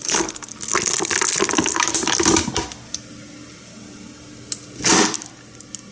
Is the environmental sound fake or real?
real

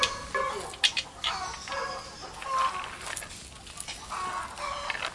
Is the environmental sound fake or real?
real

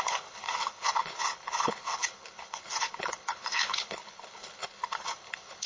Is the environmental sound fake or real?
fake